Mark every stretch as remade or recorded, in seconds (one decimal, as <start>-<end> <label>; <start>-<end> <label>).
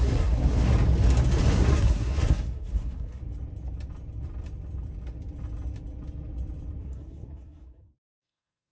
0.0-0.7 remade; 0.7-1.5 recorded; 1.5-3.2 remade; 3.2-6.8 recorded; 6.8-8.7 remade